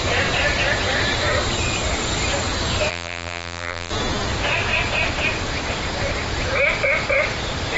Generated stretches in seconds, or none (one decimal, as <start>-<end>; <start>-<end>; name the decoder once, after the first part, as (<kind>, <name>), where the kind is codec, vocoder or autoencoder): 2.9-3.9 (vocoder, BigVGAN v2)

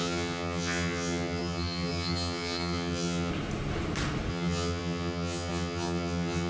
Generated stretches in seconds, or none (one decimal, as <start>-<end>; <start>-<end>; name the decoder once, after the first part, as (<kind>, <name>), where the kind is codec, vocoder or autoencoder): 0.0-3.3 (vocoder, HiFi-GAN); 4.3-6.5

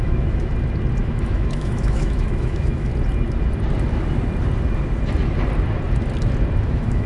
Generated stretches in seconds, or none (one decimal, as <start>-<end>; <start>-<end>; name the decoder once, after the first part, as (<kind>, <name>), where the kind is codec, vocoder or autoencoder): 0.0-0.5 (autoencoder, DAC-VAE); 1.0-2.9; 6.6-7.1